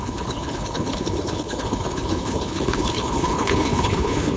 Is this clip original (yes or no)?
no